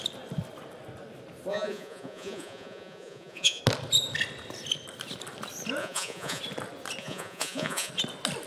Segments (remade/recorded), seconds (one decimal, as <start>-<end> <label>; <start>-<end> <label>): 0.0-1.5 recorded; 1.5-3.6 remade; 3.6-5.8 recorded; 5.8-6.4 remade; 6.4-7.0 recorded; 7.0-7.9 remade; 7.9-8.5 recorded